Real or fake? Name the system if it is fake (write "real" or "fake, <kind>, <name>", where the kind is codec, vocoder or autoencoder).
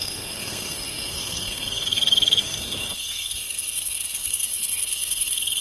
fake, codec, SNAC